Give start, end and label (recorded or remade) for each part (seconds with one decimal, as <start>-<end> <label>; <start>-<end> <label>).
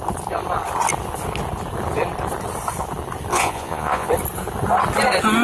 0.0-3.3 recorded; 3.3-4.1 remade; 4.1-5.4 recorded